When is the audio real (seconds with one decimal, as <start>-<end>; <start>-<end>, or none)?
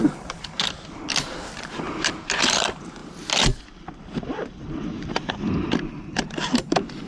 0.0-7.1